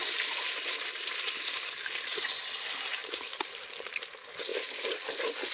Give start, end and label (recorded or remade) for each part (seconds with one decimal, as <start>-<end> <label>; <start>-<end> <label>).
0.0-3.0 recorded; 3.0-3.5 remade; 3.5-5.5 recorded